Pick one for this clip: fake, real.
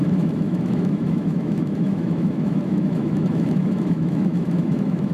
fake